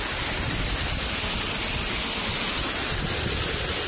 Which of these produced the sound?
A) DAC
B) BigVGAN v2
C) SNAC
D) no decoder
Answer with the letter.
D